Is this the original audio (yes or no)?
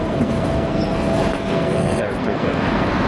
no